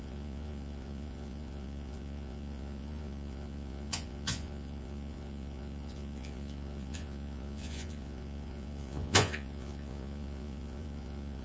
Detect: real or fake fake